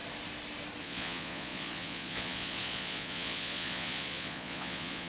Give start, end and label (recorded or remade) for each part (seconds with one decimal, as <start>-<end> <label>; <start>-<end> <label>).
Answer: 0.0-0.8 recorded; 0.8-5.1 remade